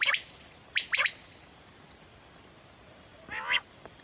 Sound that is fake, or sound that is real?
real